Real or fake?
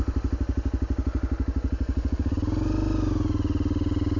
real